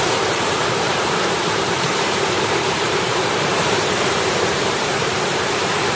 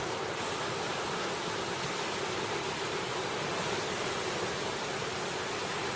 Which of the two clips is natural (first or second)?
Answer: second